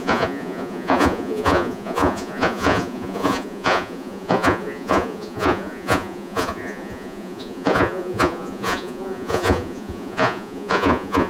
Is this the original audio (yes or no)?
no